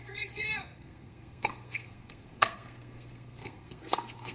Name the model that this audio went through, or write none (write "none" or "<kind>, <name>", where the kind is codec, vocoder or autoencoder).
codec, SNAC